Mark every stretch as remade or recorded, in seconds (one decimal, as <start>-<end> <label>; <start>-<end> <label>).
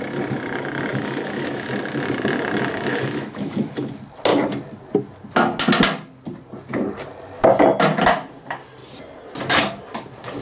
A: 0.0-0.9 recorded; 0.9-1.7 remade; 1.7-2.9 recorded; 2.9-3.9 remade; 3.9-10.4 recorded